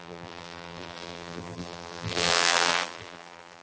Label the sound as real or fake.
fake